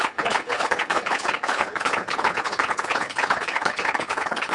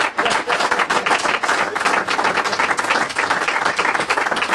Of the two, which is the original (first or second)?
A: second